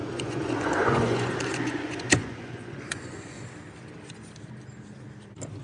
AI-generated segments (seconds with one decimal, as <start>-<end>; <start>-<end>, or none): 0.0-3.4